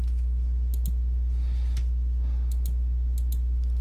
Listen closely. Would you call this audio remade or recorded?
recorded